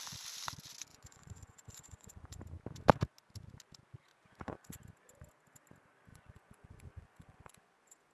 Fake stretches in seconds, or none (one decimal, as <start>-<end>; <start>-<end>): 0.9-2.4; 4.1-4.8; 6.1-8.1

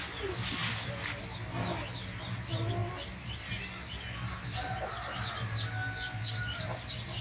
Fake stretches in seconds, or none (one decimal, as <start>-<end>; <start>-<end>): none

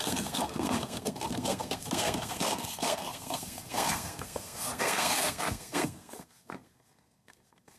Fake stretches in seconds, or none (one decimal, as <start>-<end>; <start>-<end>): 0.0-7.8

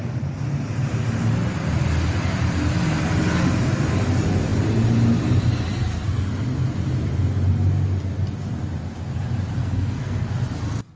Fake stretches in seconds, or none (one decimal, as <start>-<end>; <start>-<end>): 9.6-10.3

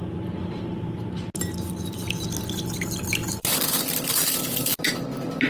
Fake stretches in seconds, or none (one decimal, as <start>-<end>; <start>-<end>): 3.2-5.0